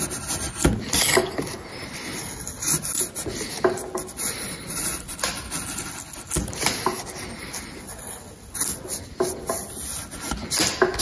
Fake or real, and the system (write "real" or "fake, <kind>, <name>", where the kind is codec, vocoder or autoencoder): real